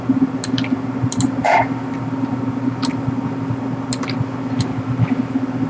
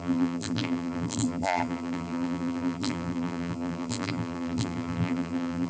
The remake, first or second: second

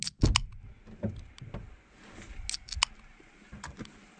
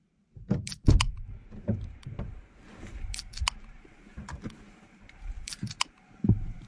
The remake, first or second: second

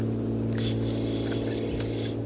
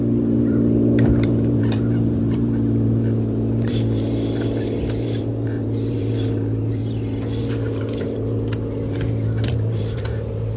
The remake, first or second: second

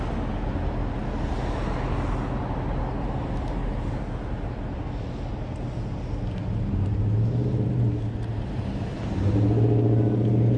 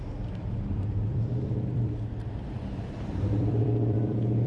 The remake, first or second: second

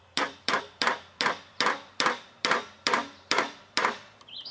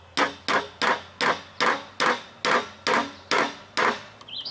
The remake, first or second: first